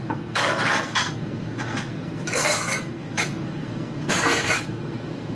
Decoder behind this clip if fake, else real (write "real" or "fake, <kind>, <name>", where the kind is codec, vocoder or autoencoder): fake, codec, SNAC